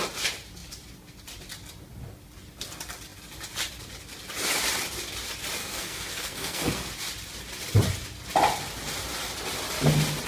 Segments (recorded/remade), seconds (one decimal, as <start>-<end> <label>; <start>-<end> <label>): 0.0-5.6 recorded; 5.6-6.9 remade; 6.9-10.3 recorded